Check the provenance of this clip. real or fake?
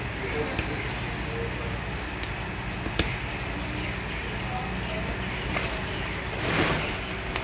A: real